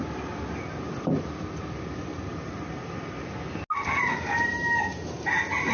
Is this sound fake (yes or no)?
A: no